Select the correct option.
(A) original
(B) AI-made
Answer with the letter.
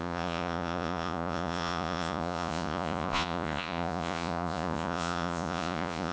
B